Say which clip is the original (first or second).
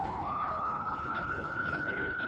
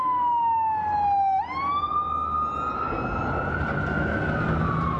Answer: second